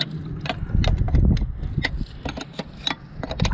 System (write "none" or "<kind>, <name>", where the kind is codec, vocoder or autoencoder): none